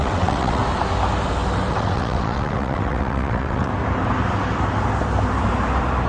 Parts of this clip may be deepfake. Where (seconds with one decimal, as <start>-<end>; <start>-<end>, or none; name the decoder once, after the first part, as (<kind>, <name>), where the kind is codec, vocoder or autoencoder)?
0.0-0.6 (vocoder, WaveNeXt); 1.7-3.7